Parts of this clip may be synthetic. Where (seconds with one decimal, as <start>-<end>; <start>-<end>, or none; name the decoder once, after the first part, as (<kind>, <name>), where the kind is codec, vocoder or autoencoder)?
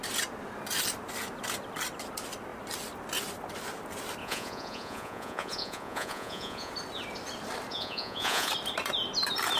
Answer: 4.2-6.7 (vocoder, Vocos); 7.7-8.5